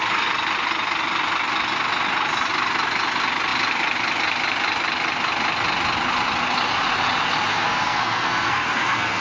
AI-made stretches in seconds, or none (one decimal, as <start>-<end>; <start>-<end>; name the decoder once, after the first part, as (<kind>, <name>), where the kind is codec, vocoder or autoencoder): 7.5-9.2 (codec, SNAC)